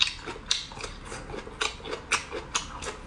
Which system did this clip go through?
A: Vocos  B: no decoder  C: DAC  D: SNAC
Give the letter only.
B